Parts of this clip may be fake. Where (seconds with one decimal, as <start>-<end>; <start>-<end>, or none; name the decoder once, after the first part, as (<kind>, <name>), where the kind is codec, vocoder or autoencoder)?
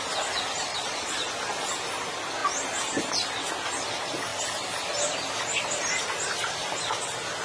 0.7-1.3 (vocoder, Vocos)